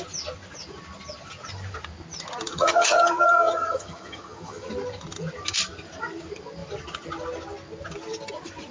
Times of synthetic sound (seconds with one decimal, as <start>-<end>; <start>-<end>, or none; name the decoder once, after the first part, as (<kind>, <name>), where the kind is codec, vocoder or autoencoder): 2.5-4.7 (vocoder, HiFi-GAN)

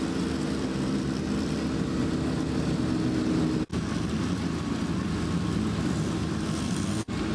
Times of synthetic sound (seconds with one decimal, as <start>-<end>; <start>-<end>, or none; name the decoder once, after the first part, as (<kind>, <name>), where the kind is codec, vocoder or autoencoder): none

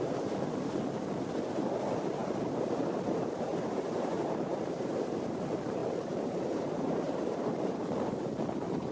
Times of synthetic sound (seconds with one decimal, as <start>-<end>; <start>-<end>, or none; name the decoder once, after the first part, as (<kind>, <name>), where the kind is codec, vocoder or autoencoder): 3.5-5.1 (vocoder, BigVGAN v2); 5.8-8.1

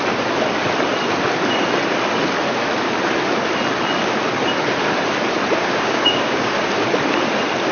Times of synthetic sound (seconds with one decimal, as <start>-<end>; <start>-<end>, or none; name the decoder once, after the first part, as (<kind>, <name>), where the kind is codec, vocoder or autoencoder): 5.6-6.7 (codec, DAC)

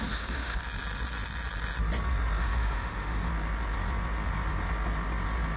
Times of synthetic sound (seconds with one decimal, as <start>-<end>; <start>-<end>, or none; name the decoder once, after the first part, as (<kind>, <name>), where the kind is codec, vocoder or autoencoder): 0.0-0.6 (autoencoder, DAC-VAE); 2.4-3.3